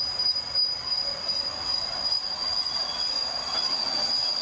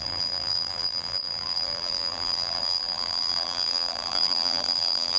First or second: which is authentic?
first